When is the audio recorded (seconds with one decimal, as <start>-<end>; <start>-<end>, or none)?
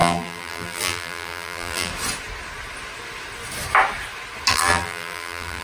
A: 1.9-4.5